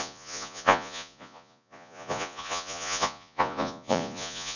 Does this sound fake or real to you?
fake